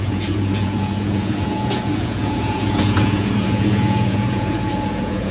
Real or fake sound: fake